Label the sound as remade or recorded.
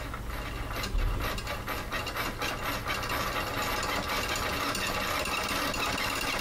recorded